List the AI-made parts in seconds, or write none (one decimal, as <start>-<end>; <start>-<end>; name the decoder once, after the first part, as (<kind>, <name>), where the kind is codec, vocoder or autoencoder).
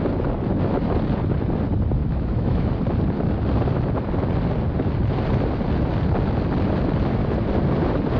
2.0-2.7 (autoencoder, DAC-VAE)